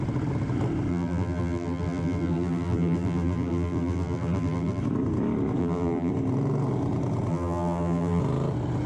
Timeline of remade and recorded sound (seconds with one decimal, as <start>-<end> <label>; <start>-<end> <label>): 0.0-0.9 recorded; 0.9-4.8 remade; 4.8-5.6 recorded; 5.6-6.1 remade; 6.1-7.3 recorded; 7.3-8.2 remade; 8.2-8.9 recorded